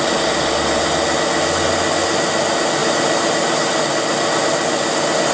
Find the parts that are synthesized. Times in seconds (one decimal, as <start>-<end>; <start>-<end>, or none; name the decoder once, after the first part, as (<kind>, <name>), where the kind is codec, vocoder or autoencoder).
2.8-3.8 (vocoder, BigVGAN v2)